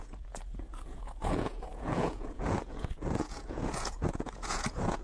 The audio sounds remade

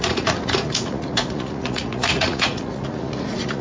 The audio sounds remade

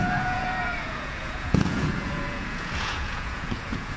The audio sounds remade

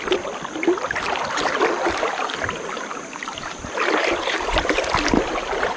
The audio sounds recorded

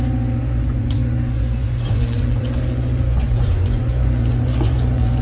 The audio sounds remade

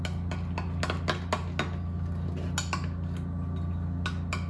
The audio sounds recorded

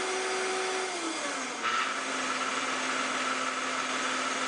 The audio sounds recorded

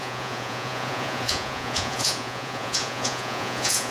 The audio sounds remade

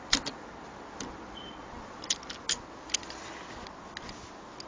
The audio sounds recorded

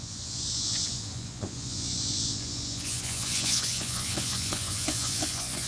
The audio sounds remade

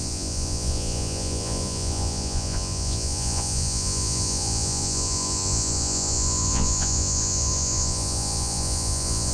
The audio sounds remade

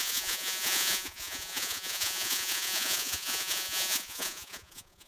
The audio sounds remade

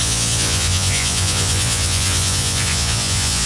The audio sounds remade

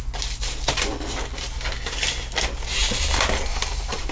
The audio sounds recorded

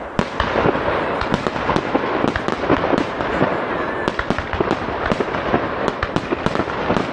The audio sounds recorded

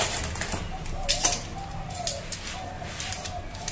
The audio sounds recorded